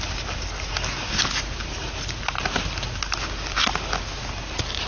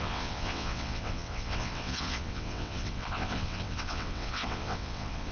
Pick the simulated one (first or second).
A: second